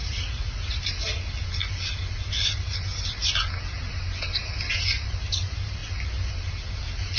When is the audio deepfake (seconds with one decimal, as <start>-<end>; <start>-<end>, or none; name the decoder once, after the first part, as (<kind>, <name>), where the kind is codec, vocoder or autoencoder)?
0.0-0.8 (vocoder, Vocos)